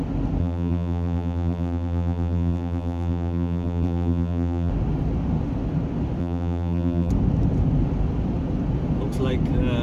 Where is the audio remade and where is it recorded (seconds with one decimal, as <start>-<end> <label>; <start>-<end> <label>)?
0.0-0.4 recorded; 0.4-4.7 remade; 4.7-6.2 recorded; 6.2-7.1 remade; 7.1-9.8 recorded